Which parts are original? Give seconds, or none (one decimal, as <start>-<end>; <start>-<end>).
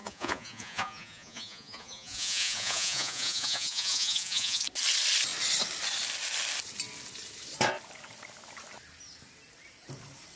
4.6-10.4